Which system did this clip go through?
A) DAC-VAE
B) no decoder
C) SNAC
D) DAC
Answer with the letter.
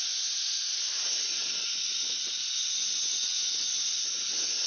B